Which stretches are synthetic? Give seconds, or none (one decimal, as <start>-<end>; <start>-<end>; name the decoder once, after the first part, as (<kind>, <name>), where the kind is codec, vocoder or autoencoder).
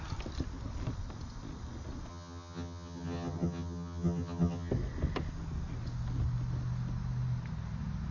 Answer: 2.1-4.7 (vocoder, HiFi-GAN)